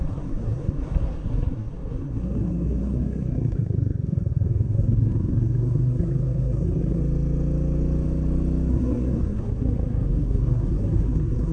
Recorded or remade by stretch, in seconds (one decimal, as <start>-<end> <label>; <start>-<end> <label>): 0.0-7.0 remade; 7.0-8.7 recorded; 8.7-11.5 remade